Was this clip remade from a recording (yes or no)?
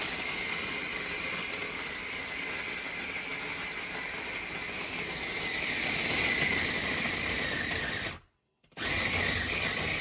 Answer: no